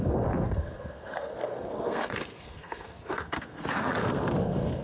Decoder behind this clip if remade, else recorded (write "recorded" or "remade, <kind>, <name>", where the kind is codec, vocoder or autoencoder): remade, codec, SNAC